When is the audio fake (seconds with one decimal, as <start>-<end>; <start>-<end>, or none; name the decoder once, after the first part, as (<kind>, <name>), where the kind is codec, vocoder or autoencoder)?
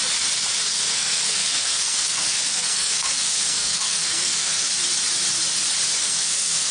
0.7-4.7 (codec, SNAC); 6.0-6.7